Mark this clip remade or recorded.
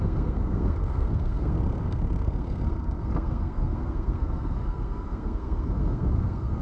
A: remade